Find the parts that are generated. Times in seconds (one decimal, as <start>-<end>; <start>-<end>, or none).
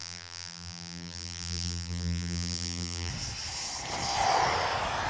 0.0-3.1